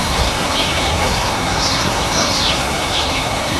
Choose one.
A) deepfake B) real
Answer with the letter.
A